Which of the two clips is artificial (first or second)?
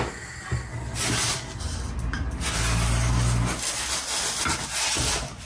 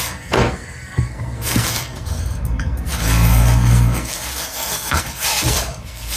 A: second